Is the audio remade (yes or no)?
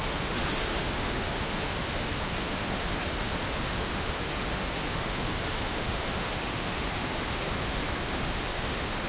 yes